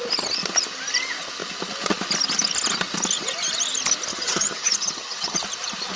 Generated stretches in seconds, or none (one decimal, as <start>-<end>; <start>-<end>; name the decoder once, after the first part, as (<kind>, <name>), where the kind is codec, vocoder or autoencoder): 4.1-5.4 (vocoder, HiFi-GAN)

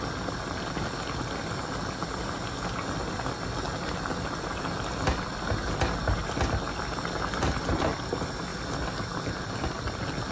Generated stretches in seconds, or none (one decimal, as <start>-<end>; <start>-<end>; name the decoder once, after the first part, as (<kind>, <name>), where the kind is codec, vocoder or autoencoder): none